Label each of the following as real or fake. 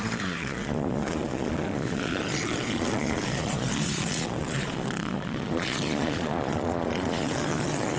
fake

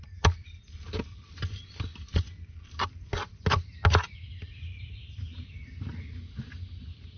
real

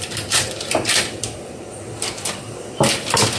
fake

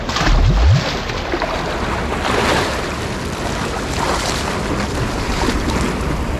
real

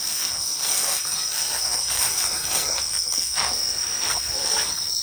fake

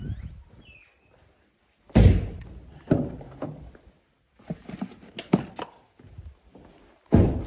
real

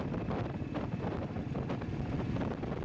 real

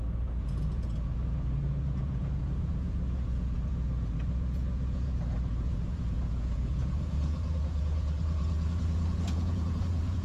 fake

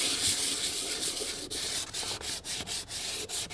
real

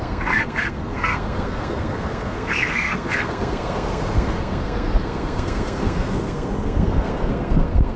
fake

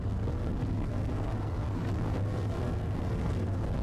fake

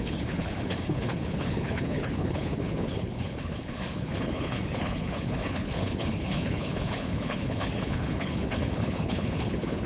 fake